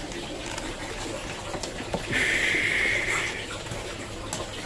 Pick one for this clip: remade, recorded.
recorded